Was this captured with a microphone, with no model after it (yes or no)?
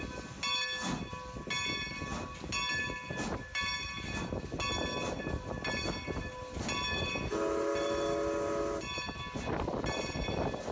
yes